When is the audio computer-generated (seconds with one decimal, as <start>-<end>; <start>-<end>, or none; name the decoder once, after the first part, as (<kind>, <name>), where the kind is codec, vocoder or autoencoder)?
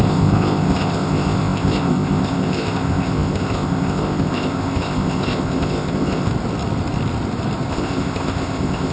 0.0-6.3 (codec, ZipCodec); 7.7-8.9